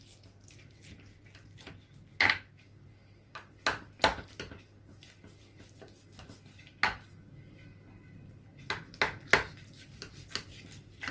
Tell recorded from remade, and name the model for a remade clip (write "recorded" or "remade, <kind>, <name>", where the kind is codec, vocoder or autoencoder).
recorded